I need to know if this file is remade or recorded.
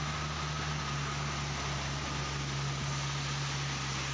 recorded